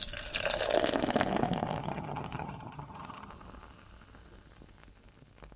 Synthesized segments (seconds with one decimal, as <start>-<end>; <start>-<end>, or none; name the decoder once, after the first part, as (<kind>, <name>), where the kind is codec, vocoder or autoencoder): 1.8-3.3 (vocoder, HiFi-GAN)